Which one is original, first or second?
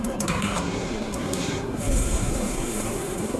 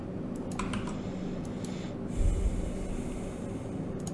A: second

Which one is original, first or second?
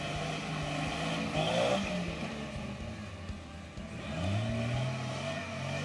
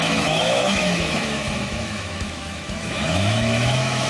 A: first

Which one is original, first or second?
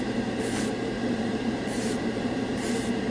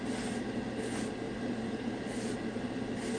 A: second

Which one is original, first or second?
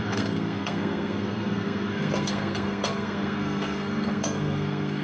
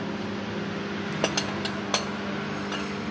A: second